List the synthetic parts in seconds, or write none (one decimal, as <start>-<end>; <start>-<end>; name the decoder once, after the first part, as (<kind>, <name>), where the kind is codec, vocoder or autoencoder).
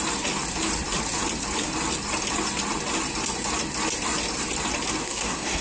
5.0-5.6 (codec, SNAC)